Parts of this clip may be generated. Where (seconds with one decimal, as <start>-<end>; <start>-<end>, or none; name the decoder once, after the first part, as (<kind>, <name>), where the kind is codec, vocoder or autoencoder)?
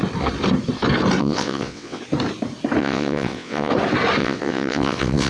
1.2-2.0 (vocoder, WaveNeXt); 2.8-3.7; 4.2-5.3